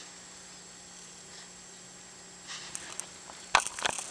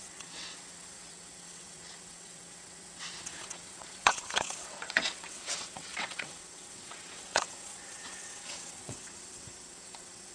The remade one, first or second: second